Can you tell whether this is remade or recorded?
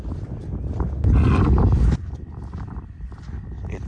recorded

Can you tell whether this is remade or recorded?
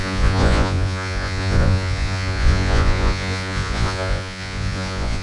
remade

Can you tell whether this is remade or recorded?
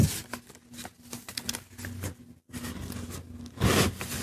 recorded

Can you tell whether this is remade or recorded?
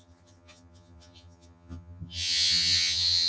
remade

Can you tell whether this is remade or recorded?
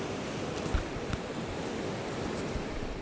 recorded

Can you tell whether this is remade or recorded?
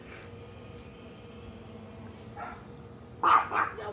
recorded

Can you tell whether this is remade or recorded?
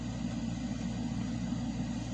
recorded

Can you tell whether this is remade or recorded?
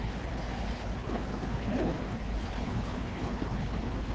remade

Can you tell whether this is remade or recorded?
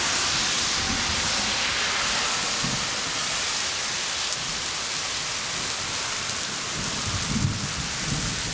recorded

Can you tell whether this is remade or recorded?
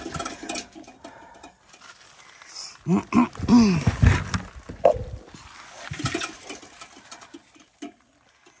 recorded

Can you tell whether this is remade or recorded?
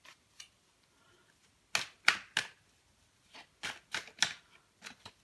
recorded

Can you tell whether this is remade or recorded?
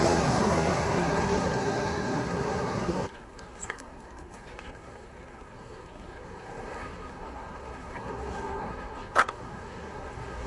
remade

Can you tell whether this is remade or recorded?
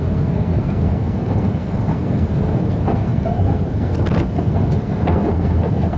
remade